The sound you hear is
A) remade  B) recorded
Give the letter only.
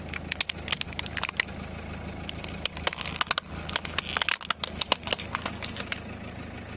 B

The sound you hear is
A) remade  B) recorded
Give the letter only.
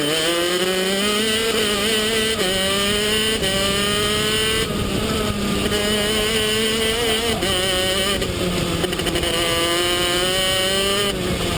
B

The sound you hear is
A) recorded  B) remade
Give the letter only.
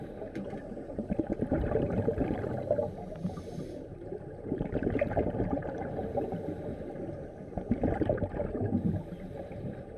B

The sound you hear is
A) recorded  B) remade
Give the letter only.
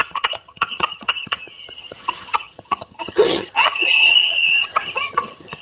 B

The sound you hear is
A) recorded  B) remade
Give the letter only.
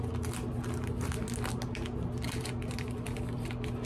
A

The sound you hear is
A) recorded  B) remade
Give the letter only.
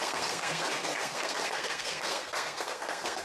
B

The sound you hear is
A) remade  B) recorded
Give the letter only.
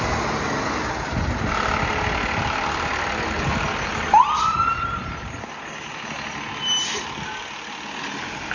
B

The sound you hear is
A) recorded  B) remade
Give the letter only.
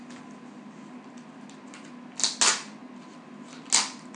A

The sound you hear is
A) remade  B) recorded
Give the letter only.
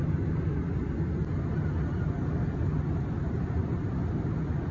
B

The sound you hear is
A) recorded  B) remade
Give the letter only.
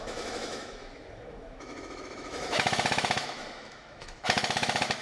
B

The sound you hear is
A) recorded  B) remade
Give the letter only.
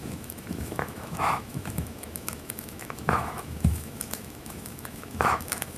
B